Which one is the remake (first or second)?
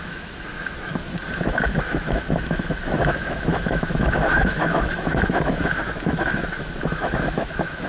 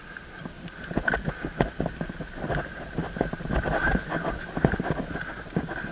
first